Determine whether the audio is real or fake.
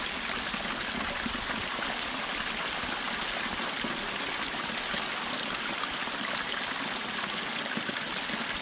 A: real